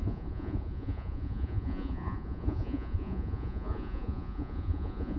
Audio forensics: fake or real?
fake